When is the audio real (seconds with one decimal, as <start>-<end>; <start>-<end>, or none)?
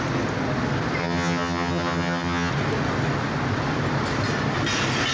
0.0-1.0; 2.5-5.1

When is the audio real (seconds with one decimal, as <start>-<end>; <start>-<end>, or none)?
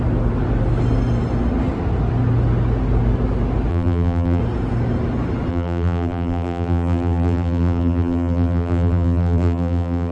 0.0-3.7; 4.4-5.5